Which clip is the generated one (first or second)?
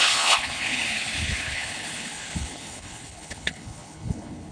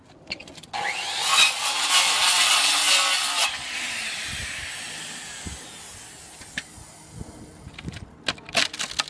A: first